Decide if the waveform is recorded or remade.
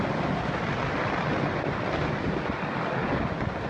recorded